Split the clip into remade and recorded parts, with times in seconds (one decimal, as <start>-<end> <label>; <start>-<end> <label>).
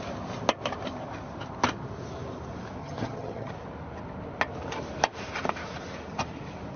0.0-2.8 recorded; 2.8-3.5 remade; 3.5-6.8 recorded